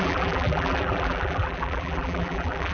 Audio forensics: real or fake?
fake